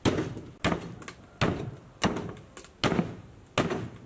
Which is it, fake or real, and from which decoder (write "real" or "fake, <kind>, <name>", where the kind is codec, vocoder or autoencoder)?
real